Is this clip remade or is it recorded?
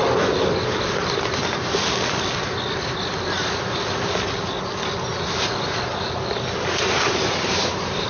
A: recorded